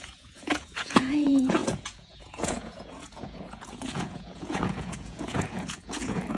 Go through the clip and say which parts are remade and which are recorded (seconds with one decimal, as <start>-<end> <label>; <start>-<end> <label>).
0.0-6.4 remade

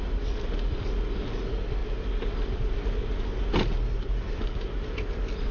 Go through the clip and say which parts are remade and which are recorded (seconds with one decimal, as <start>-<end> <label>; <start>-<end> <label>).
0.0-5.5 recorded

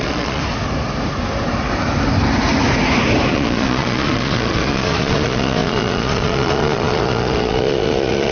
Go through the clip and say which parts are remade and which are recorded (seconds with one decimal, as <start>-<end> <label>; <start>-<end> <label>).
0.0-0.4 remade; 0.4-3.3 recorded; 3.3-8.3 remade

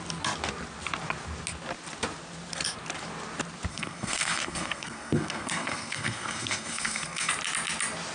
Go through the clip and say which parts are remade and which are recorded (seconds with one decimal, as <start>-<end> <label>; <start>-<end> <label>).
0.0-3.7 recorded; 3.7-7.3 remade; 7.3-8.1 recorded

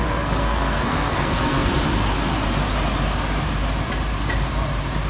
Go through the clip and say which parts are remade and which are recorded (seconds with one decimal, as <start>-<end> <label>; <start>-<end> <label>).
0.0-1.7 remade; 1.7-5.1 recorded

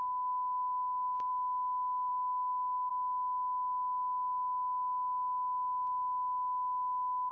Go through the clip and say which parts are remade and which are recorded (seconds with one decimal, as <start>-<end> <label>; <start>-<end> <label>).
0.0-1.3 remade; 1.3-2.1 recorded; 2.1-2.9 remade; 2.9-7.3 recorded